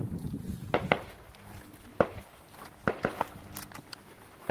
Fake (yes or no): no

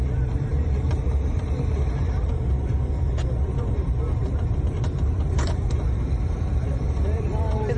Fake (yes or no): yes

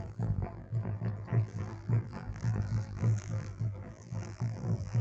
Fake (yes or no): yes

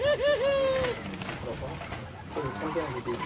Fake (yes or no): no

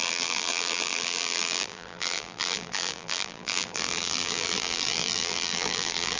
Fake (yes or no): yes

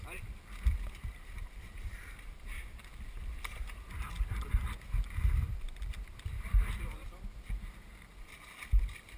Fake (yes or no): yes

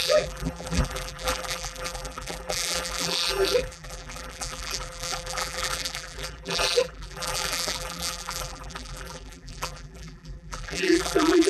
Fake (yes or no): yes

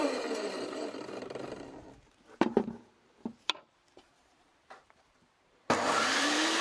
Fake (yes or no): yes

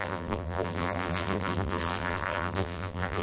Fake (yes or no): yes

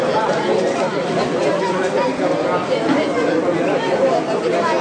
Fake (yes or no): no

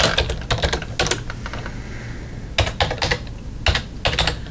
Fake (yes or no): no